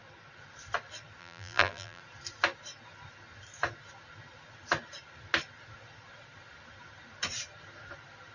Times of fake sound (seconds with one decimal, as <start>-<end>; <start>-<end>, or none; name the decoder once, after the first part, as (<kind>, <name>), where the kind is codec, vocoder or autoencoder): 1.2-2.0 (vocoder, BigVGAN v2)